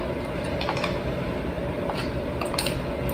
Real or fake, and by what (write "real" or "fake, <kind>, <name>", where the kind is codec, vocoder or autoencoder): real